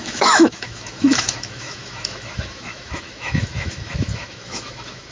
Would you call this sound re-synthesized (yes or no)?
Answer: yes